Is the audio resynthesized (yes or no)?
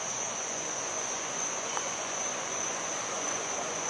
yes